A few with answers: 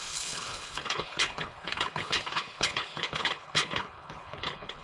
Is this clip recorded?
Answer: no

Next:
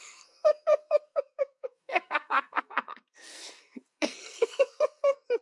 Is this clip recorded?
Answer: no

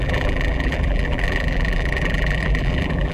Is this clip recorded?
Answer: no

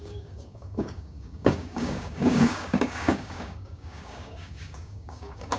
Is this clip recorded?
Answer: no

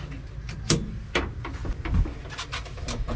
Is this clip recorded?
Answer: yes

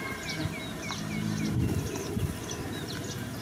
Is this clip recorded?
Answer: yes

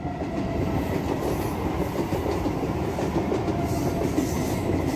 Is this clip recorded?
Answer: yes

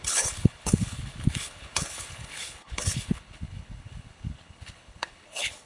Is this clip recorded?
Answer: no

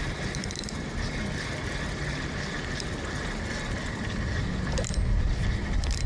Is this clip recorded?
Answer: yes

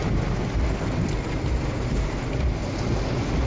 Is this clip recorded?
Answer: yes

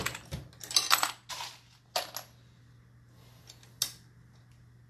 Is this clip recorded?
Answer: yes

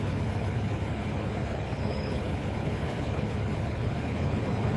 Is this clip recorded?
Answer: no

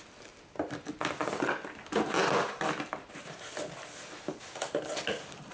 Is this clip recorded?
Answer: yes